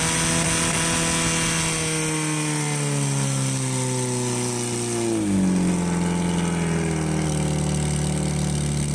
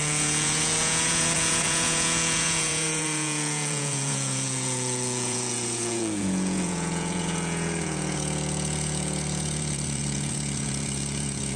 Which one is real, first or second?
first